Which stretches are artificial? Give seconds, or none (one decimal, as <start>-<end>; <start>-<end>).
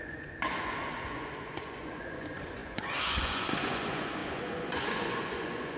0.0-5.8